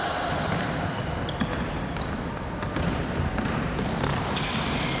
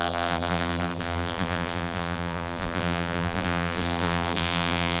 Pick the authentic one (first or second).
first